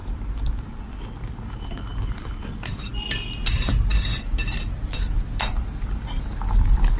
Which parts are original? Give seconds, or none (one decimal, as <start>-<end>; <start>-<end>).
1.5-1.9; 2.9-7.0